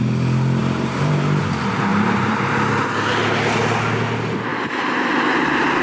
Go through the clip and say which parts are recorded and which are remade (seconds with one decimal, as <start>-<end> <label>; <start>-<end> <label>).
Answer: 0.0-0.6 recorded; 0.6-1.4 remade; 1.4-1.9 recorded; 1.9-2.7 remade; 2.7-5.8 recorded

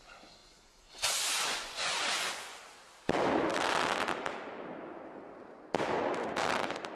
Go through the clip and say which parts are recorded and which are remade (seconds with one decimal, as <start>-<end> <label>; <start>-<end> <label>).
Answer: 0.0-0.4 recorded; 0.4-2.6 remade; 2.6-7.0 recorded

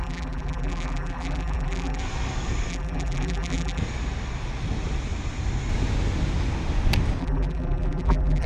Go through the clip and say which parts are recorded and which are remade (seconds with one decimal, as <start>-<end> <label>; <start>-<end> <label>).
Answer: 0.0-2.0 remade; 2.0-2.7 recorded; 2.7-3.8 remade; 3.8-7.2 recorded; 7.2-8.5 remade

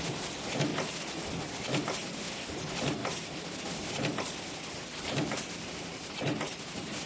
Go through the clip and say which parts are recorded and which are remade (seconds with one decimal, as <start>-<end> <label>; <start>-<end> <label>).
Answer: 0.0-7.1 recorded

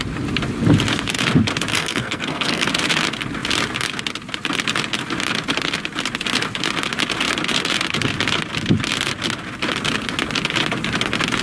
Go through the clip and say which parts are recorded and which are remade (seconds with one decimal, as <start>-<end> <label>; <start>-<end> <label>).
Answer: 0.0-1.7 recorded; 1.7-2.7 remade; 2.7-11.4 recorded

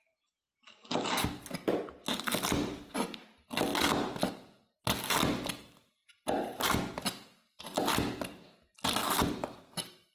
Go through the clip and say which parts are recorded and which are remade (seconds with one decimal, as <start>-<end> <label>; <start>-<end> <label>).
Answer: 0.0-10.1 recorded

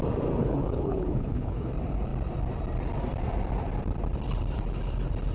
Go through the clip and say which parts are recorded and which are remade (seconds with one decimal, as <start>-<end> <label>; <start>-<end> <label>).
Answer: 0.0-0.4 recorded; 0.4-1.7 remade; 1.7-5.3 recorded

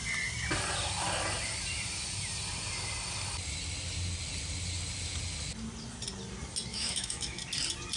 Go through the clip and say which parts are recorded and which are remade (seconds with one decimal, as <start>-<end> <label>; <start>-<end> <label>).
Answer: 0.0-6.7 recorded; 6.7-7.4 remade; 7.4-8.0 recorded